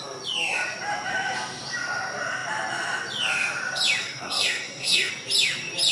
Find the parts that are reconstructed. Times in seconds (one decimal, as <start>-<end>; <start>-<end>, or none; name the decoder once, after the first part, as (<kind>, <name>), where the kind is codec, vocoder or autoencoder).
4.0-5.1 (codec, SNAC)

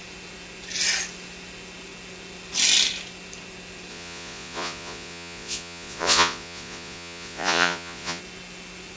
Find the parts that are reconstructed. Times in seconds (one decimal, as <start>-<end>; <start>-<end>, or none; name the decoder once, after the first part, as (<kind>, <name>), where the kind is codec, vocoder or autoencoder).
3.9-8.2 (vocoder, Vocos)

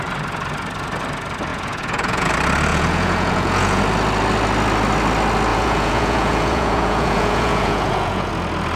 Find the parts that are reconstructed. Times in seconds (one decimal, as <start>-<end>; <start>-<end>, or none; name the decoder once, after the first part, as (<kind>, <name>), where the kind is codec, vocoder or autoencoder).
1.5-2.3 (vocoder, Vocos); 2.7-3.8; 5.5-8.3

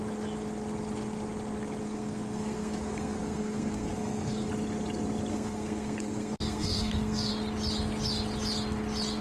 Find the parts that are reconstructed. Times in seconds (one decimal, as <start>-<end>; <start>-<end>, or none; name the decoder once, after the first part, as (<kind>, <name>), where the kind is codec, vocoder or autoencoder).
1.8-4.5 (codec, SNAC); 5.3-7.3

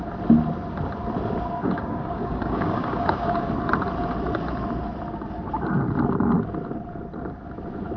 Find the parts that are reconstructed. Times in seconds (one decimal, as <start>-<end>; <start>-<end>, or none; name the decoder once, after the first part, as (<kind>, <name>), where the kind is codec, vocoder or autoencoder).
1.6-3.5 (codec, DAC)

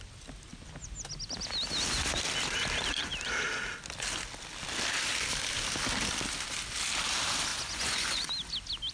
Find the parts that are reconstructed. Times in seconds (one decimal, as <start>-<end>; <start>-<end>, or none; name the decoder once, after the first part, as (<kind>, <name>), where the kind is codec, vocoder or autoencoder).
7.5-8.3 (vocoder, Vocos)

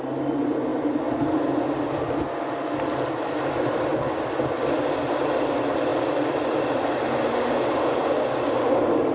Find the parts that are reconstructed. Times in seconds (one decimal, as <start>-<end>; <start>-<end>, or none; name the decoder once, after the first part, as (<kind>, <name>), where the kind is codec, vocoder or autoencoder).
none